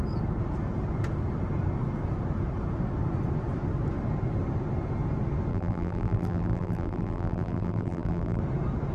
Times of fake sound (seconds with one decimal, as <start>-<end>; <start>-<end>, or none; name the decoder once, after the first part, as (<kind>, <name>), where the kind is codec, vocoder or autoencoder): 5.5-8.4 (vocoder, BigVGAN v2)

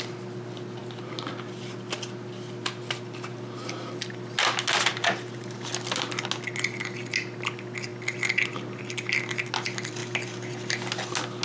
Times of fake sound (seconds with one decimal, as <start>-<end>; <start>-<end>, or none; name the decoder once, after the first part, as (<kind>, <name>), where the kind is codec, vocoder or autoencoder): 4.9-5.7 (vocoder, BigVGAN v2)

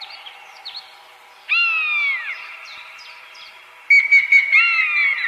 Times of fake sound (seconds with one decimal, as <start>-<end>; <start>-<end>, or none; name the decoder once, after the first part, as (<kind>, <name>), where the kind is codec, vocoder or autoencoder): 2.2-3.5 (vocoder, BigVGAN v2)

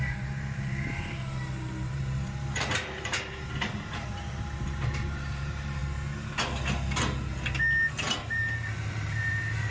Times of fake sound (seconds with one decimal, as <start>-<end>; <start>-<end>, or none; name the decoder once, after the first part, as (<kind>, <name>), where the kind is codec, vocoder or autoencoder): 0.0-5.8 (vocoder, BigVGAN v2); 8.3-9.7

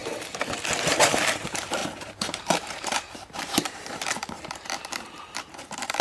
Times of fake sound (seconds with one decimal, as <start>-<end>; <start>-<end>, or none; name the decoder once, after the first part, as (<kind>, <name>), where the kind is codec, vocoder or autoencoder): 0.9-6.0 (vocoder, BigVGAN v2)

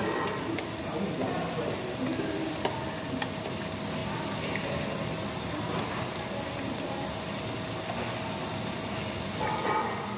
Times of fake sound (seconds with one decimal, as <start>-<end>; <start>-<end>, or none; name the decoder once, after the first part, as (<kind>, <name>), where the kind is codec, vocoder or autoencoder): none

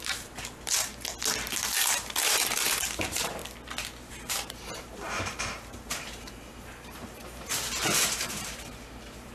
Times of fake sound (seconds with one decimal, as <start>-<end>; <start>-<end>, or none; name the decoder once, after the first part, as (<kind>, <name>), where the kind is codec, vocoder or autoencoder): 0.0-0.9 (vocoder, BigVGAN v2); 1.8-3.4; 4.1-9.3